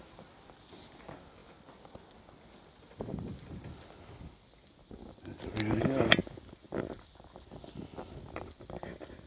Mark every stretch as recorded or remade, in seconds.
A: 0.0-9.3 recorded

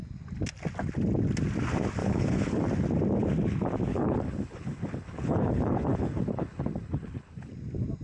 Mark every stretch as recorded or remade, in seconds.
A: 0.0-2.0 recorded; 2.0-2.6 remade; 2.6-3.9 recorded; 3.9-7.5 remade; 7.5-8.0 recorded

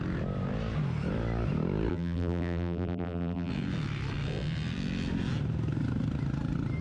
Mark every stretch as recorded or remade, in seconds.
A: 0.0-1.9 recorded; 1.9-3.5 remade; 3.5-6.8 recorded

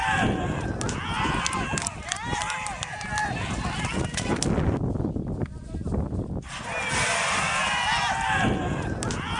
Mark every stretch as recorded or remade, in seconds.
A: 0.0-9.4 recorded